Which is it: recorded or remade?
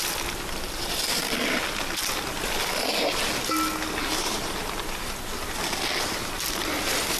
recorded